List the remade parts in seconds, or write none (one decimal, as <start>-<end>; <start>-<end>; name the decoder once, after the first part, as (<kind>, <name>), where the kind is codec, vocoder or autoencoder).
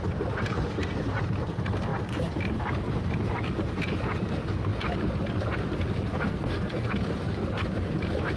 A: 6.1-6.9 (codec, SNAC)